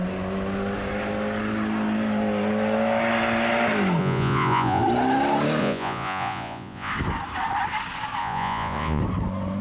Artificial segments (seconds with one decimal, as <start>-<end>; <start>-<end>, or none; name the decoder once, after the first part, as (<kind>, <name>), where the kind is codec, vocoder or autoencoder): 4.0-4.8 (vocoder, Vocos); 5.6-6.9; 8.2-9.0